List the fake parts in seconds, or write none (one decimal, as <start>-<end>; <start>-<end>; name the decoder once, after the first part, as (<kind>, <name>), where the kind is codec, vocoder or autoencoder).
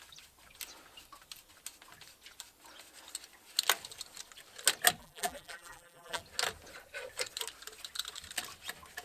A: 5.0-6.2 (vocoder, BigVGAN v2)